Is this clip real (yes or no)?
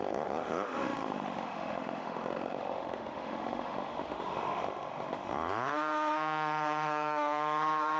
no